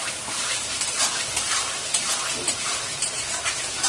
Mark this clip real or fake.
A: fake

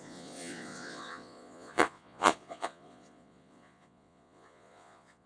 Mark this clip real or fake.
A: fake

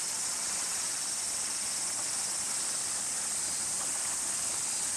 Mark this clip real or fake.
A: real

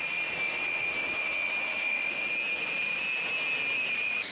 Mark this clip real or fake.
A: real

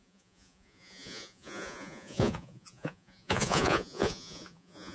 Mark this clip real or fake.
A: fake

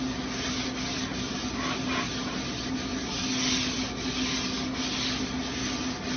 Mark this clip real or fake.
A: real